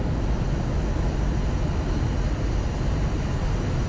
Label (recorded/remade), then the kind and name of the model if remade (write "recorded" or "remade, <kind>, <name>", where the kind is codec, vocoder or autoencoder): recorded